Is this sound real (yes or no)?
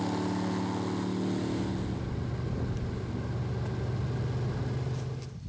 yes